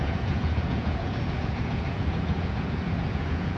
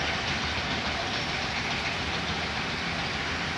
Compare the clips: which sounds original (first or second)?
second